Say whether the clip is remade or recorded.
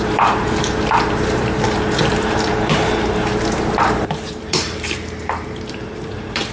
remade